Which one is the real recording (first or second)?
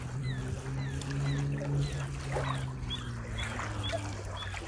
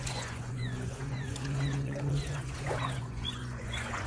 first